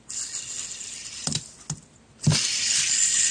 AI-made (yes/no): no